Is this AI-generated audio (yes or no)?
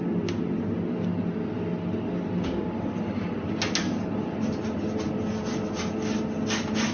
no